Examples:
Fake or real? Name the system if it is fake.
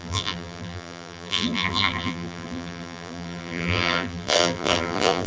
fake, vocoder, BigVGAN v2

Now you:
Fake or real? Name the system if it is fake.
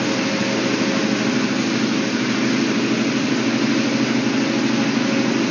real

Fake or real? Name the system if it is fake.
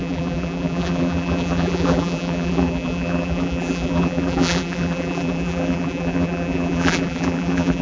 fake, vocoder, BigVGAN v2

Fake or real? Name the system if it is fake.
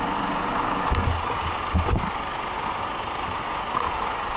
real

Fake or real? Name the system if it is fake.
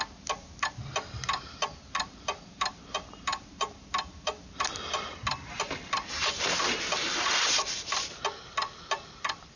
fake, vocoder, BigVGAN v2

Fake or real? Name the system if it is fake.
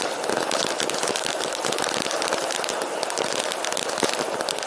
fake, vocoder, BigVGAN v2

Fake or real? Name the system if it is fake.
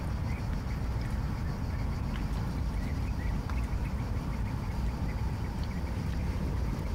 real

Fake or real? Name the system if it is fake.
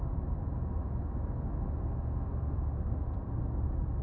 real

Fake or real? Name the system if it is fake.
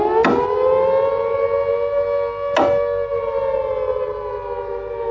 real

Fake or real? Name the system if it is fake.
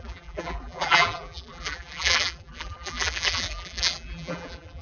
fake, vocoder, BigVGAN v2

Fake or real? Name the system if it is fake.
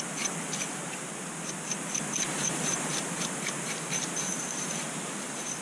real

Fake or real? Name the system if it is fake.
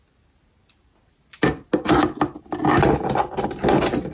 real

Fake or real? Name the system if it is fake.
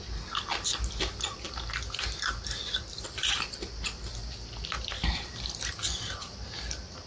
real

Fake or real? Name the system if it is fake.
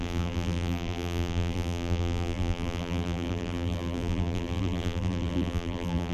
fake, vocoder, BigVGAN v2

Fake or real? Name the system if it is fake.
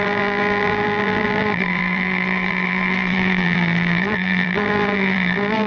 fake, vocoder, BigVGAN v2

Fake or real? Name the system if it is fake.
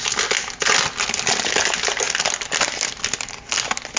real